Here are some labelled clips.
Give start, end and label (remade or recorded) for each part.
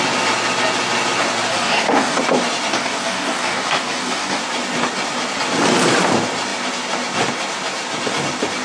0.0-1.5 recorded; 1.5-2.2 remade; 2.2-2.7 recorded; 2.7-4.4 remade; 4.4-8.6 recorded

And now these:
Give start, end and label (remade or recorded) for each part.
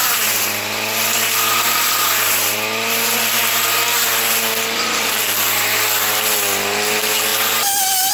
0.0-8.1 recorded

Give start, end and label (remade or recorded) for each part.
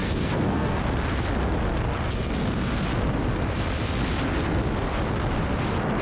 0.0-0.8 remade; 0.8-6.0 recorded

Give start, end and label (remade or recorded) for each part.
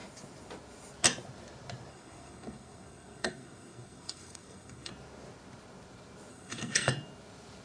0.0-1.9 recorded; 1.9-4.9 remade; 4.9-6.3 recorded; 6.3-6.9 remade; 6.9-7.6 recorded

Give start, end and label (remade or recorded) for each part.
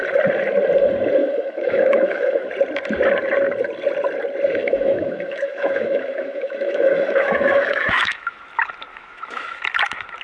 0.0-1.2 recorded; 1.2-2.5 remade; 2.5-4.6 recorded; 4.6-8.4 remade; 8.4-8.9 recorded; 8.9-9.6 remade; 9.6-10.2 recorded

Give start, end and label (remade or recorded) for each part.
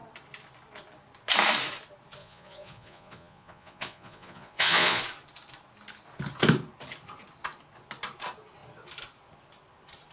0.0-2.2 recorded; 2.2-5.0 remade; 5.0-10.1 recorded